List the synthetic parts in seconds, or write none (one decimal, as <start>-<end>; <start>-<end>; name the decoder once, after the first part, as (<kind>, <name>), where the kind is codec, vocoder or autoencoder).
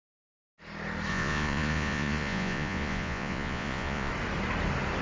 1.1-4.1 (vocoder, Vocos)